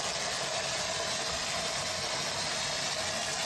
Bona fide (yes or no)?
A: yes